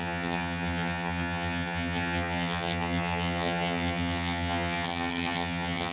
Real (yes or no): no